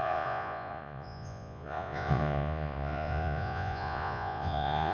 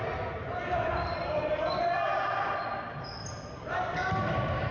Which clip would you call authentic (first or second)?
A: second